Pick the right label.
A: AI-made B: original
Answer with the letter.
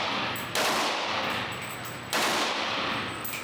B